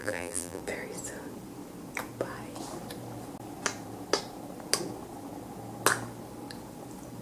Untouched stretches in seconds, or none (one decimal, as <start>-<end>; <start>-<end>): 0.6-7.2